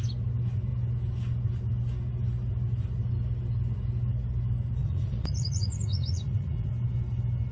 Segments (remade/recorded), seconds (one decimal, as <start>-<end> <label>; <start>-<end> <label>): 0.0-4.8 recorded; 4.8-6.7 remade; 6.7-7.5 recorded